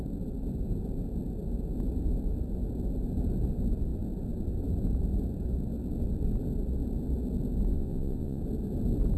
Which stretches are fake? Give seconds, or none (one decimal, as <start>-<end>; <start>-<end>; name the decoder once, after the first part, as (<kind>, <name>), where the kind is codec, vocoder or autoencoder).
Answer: 7.7-8.4 (vocoder, Vocos)